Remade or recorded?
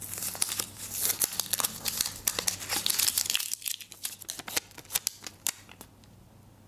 recorded